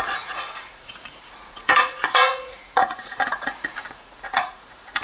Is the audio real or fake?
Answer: fake